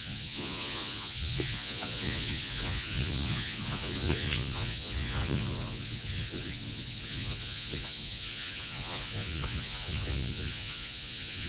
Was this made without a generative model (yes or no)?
no